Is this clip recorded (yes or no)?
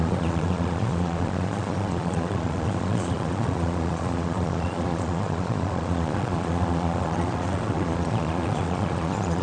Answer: no